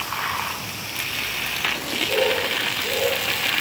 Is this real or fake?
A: real